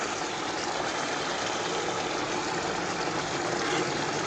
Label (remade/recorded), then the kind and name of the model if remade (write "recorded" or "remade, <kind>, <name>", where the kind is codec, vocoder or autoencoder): recorded